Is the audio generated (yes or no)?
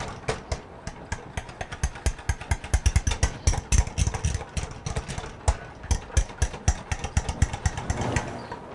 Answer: no